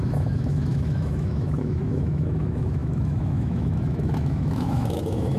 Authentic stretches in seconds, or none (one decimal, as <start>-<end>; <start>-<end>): none